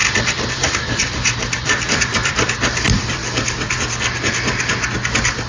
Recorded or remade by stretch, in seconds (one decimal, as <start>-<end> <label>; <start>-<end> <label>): 0.0-3.2 remade; 3.2-5.5 recorded